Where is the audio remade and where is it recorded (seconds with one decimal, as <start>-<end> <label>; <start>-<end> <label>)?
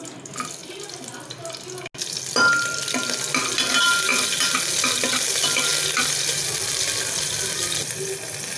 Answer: 0.0-8.6 recorded